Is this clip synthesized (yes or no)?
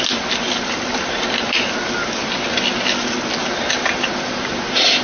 no